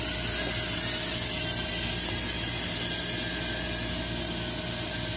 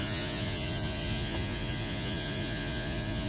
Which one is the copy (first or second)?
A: second